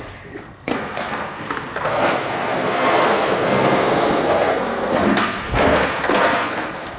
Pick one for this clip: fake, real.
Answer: fake